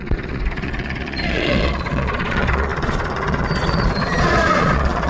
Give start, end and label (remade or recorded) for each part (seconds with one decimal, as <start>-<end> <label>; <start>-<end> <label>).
0.0-5.1 remade